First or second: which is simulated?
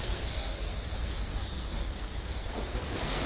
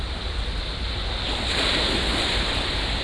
first